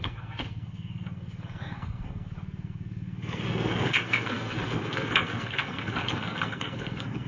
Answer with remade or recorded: remade